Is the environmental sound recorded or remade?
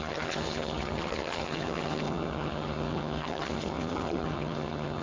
remade